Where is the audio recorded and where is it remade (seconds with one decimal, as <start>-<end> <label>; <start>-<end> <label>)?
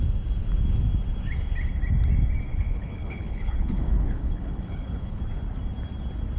0.0-2.5 recorded; 2.5-5.2 remade; 5.2-6.4 recorded